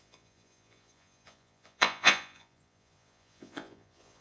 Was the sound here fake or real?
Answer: fake